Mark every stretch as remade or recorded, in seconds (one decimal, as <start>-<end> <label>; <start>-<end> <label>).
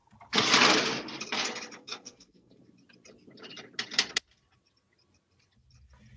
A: 0.0-1.8 recorded; 1.8-2.6 remade; 2.6-6.2 recorded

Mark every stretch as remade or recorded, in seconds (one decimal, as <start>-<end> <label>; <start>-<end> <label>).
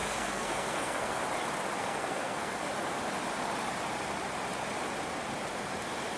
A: 0.0-1.2 remade; 1.2-1.8 recorded; 1.8-2.7 remade; 2.7-6.2 recorded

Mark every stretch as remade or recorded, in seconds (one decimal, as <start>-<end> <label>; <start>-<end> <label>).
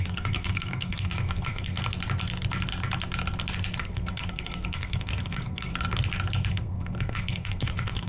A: 0.0-1.8 remade; 1.8-3.8 recorded; 3.8-5.7 remade; 5.7-6.5 recorded; 6.5-8.1 remade